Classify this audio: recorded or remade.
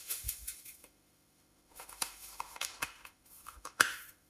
remade